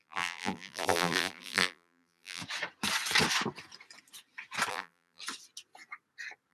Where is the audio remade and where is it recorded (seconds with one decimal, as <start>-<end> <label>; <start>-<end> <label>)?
0.0-2.4 remade; 2.4-4.7 recorded; 4.7-5.2 remade; 5.2-6.5 recorded

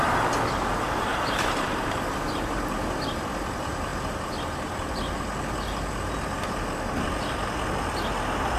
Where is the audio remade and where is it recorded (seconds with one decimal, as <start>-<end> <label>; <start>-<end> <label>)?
0.0-1.1 recorded; 1.1-2.4 remade; 2.4-8.6 recorded

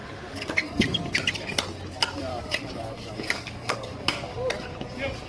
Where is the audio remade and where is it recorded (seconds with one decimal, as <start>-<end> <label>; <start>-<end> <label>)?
0.0-1.0 remade; 1.0-2.3 recorded; 2.3-4.5 remade; 4.5-5.3 recorded

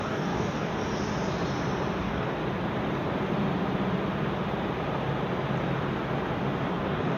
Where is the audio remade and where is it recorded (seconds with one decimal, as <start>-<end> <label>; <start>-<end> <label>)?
0.0-0.7 remade; 0.7-2.0 recorded; 2.0-2.4 remade; 2.4-6.7 recorded; 6.7-7.2 remade

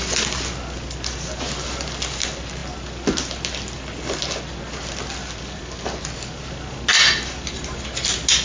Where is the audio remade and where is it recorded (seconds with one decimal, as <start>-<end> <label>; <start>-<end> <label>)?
0.0-5.2 recorded; 5.2-6.1 remade; 6.1-6.9 recorded; 6.9-7.5 remade; 7.5-8.4 recorded

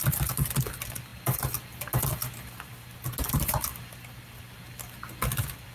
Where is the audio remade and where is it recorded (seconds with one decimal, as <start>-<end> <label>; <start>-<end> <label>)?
0.0-5.7 recorded